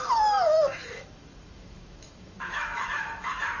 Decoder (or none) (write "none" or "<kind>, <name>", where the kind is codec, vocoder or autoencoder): autoencoder, DAC-VAE